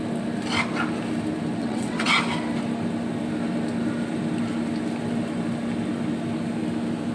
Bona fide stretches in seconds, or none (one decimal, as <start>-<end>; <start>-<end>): 0.0-1.6; 2.2-7.1